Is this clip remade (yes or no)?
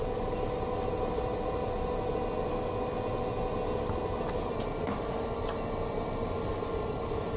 no